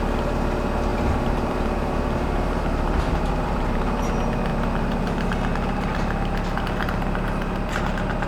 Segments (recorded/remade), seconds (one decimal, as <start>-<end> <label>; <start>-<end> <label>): 0.0-0.9 recorded; 0.9-4.1 remade; 4.1-8.3 recorded